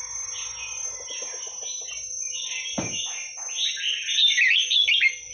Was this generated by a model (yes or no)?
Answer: no